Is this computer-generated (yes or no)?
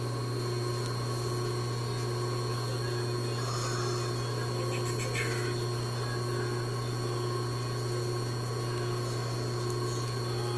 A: no